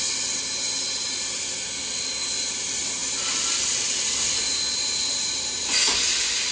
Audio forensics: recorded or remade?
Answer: recorded